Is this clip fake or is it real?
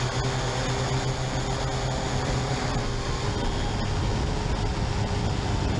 real